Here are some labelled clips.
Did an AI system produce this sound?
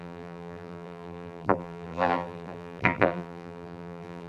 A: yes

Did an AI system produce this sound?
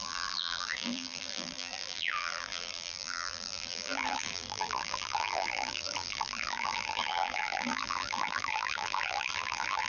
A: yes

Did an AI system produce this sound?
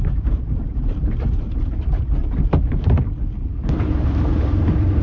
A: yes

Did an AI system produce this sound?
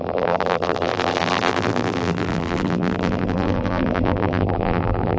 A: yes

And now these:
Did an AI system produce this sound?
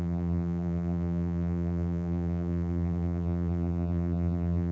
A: yes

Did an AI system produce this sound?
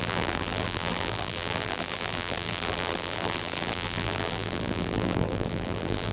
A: yes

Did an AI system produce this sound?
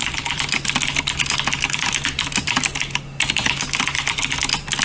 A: yes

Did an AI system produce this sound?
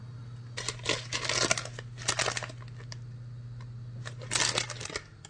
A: no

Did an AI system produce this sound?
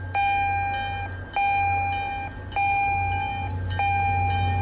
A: no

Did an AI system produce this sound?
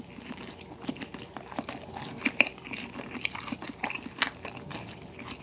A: no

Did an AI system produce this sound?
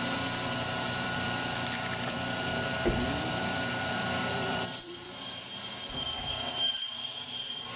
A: yes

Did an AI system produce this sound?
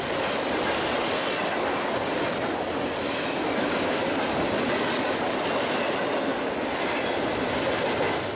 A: no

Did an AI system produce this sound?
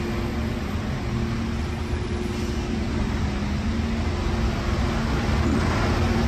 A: no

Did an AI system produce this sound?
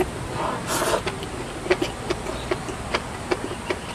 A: no